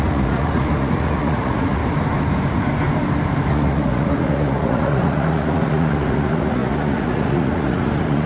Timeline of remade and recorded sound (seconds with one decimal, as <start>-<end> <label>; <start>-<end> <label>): 0.0-1.8 remade; 1.8-3.5 recorded; 3.5-8.3 remade